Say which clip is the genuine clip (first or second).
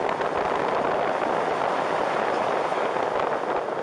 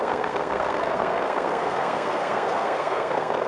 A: first